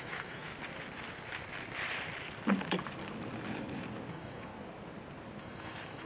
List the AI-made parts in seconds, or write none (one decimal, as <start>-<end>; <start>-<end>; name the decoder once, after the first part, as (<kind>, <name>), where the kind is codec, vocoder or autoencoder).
0.0-0.5 (autoencoder, DAC-VAE); 4.1-4.5; 5.4-6.1